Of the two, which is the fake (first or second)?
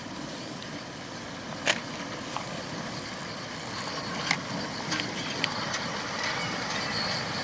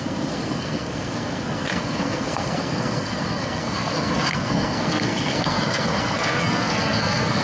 second